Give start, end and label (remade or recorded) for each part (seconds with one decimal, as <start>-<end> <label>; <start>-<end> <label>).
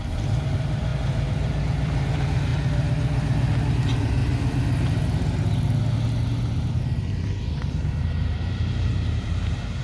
0.0-2.5 remade; 2.5-3.7 recorded; 3.7-4.2 remade; 4.2-7.2 recorded; 7.2-9.8 remade